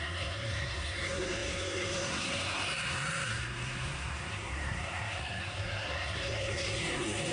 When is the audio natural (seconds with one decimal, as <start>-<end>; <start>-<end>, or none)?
none